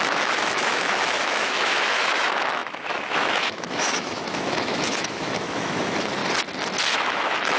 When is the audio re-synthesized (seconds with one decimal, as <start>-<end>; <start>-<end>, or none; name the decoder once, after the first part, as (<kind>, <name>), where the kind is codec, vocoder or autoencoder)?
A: 0.0-6.2 (autoencoder, DAC-VAE); 6.9-7.6

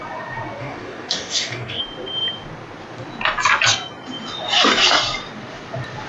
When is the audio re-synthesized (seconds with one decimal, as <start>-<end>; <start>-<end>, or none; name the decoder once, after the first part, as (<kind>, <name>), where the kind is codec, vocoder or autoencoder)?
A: 0.6-1.8 (codec, DAC)